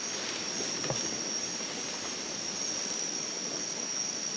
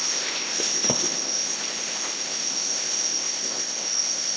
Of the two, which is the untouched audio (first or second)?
first